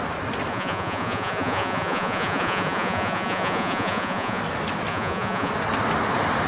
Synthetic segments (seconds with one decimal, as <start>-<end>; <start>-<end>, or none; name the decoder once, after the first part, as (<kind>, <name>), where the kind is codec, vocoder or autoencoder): 0.5-4.4 (vocoder, Vocos); 4.9-5.5